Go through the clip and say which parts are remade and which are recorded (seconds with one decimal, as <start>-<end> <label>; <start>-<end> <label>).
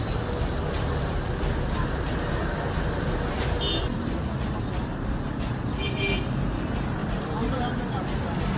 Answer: 0.0-7.0 recorded; 7.0-8.0 remade; 8.0-8.6 recorded